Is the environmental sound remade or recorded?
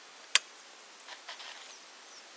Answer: recorded